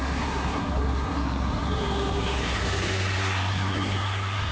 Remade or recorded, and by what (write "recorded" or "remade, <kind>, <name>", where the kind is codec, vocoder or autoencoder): remade, codec, SNAC